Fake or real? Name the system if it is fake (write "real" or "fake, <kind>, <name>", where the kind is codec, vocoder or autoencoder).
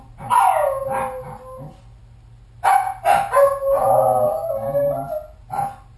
real